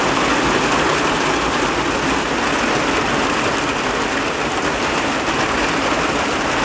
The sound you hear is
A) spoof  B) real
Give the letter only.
B